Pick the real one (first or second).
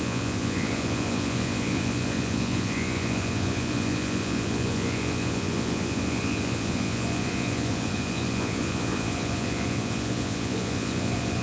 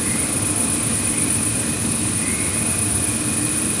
second